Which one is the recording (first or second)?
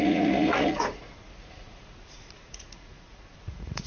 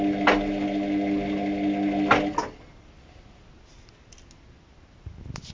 second